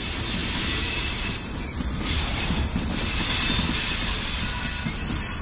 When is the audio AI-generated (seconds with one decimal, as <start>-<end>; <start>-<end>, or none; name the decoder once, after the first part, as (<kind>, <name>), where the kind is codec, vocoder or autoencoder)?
0.4-3.6 (vocoder, BigVGAN v2)